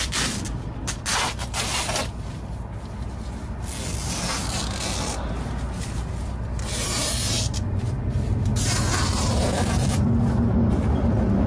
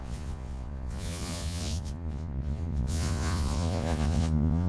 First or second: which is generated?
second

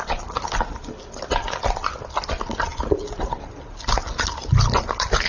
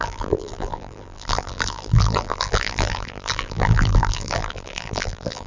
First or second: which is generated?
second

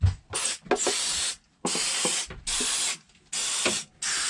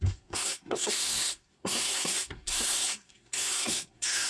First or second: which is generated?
second